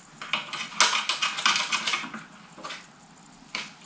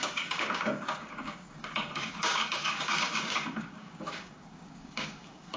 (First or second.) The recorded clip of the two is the first